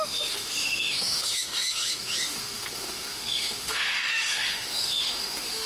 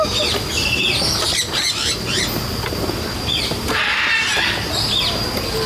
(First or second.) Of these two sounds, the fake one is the first